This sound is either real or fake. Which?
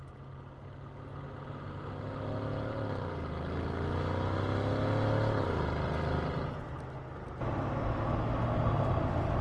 real